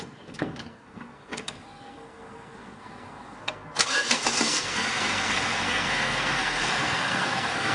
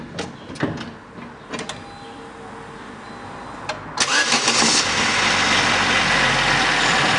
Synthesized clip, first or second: first